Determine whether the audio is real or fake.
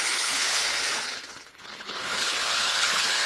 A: fake